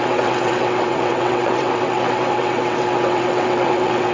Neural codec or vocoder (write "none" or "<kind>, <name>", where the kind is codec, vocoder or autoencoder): vocoder, WaveNeXt